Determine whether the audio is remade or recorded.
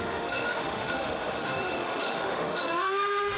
remade